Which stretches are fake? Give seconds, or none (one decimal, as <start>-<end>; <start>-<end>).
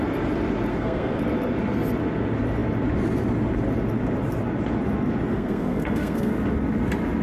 0.7-1.2; 5.3-6.3